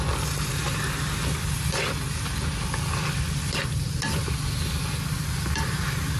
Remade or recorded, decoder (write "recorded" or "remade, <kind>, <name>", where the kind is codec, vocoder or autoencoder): recorded